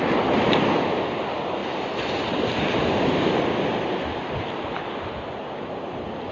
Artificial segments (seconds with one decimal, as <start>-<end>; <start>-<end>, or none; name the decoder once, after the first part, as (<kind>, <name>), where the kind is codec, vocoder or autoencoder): none

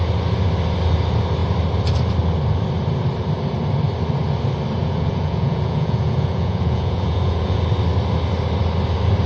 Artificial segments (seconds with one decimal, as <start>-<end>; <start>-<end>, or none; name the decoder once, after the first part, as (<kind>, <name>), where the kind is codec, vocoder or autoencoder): 4.8-7.6 (vocoder, Vocos)

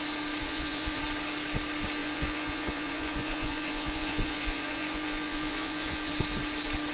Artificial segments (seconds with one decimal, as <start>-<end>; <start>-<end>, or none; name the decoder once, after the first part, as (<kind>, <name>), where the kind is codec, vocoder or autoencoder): 0.4-1.0 (vocoder, Vocos); 2.0-6.1

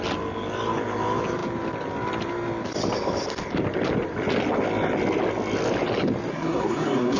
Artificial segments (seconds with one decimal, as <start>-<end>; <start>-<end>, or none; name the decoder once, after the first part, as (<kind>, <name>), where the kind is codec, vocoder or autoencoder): 6.3-7.2 (codec, SNAC)